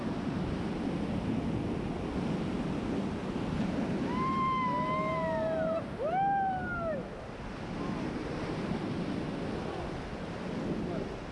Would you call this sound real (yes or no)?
yes